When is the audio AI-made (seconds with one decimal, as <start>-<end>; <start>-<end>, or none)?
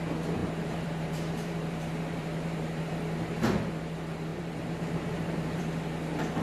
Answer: 0.4-2.9; 4.3-5.6